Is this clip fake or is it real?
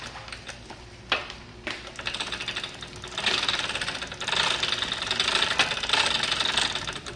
real